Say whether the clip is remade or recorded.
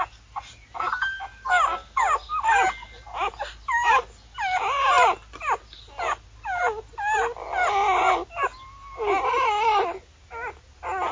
recorded